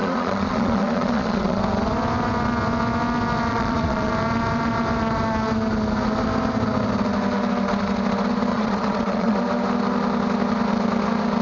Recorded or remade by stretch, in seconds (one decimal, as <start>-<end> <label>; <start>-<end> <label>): 0.0-1.6 remade; 1.6-3.5 recorded; 3.5-4.1 remade; 4.1-8.5 recorded; 8.5-9.4 remade; 9.4-11.4 recorded